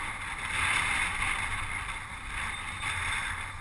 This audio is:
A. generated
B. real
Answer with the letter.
B